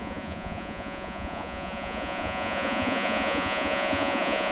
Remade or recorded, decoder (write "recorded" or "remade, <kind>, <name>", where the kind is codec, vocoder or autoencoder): remade, vocoder, Vocos